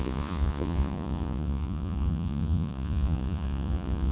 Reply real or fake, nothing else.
fake